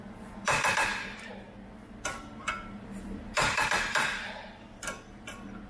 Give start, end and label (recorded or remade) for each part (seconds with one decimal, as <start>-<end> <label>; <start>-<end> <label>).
0.0-5.7 remade